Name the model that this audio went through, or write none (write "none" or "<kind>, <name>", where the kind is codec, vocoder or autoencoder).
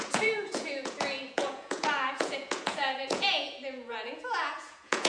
vocoder, Vocos